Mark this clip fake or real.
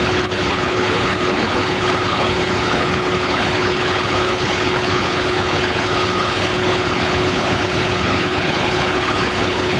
fake